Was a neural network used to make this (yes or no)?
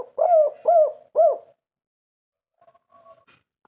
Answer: no